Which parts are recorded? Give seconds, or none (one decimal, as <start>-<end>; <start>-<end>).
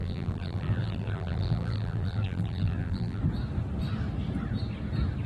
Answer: 3.2-5.3